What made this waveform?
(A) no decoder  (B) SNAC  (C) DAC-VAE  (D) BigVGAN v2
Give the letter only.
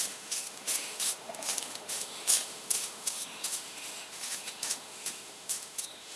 C